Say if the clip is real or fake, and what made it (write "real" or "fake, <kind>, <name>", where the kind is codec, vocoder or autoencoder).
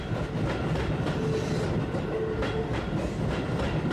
real